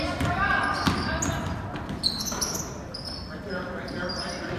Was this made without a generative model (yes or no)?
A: yes